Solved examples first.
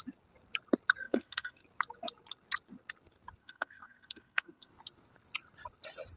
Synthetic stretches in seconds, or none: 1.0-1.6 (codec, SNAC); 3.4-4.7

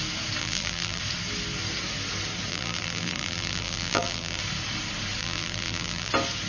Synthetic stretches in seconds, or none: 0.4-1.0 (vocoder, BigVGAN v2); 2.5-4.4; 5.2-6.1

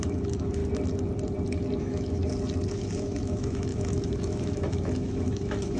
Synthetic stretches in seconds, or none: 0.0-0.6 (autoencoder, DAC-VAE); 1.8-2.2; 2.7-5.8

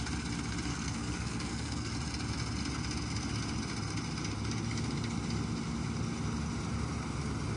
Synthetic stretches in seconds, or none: 0.7-1.9 (codec, SNAC)

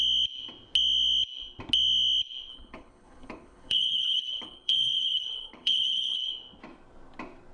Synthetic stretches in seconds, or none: 2.5-6.3 (codec, HILCodec)

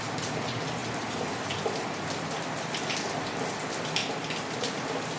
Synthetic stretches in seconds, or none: none

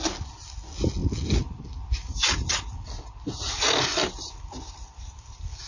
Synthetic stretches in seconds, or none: none